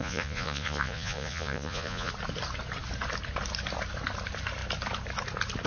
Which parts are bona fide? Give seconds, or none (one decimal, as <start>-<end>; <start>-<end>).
2.1-5.7